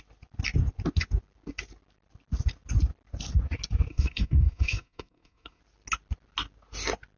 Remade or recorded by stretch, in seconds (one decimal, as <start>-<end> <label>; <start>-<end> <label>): 0.0-3.9 recorded; 3.9-5.6 remade; 5.6-7.2 recorded